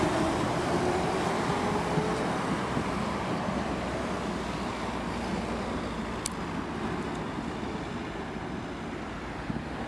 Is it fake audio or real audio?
real